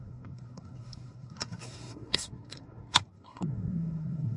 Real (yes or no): no